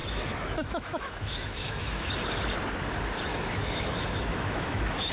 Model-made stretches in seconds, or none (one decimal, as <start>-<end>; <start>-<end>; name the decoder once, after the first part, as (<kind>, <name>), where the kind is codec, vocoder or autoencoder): 0.0-2.1 (autoencoder, DAC-VAE); 3.3-5.1